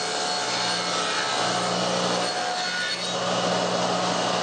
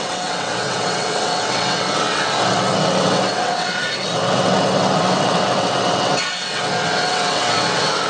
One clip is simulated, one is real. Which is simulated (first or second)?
second